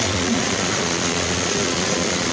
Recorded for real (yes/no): no